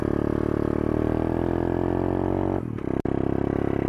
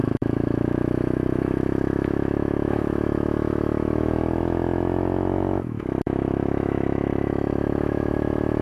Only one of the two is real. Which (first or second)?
first